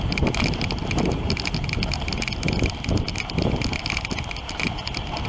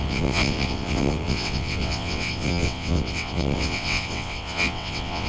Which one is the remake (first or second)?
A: second